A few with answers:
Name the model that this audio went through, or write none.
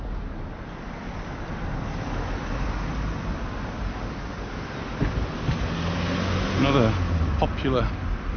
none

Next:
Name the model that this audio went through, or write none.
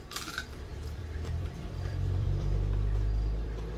vocoder, BigVGAN v2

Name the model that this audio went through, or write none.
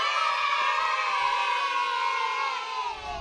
none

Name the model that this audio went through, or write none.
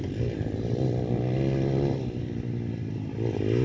none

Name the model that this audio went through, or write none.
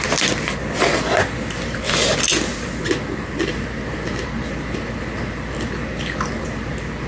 vocoder, BigVGAN v2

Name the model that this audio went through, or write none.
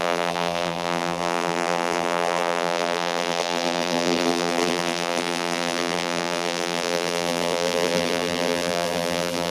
vocoder, BigVGAN v2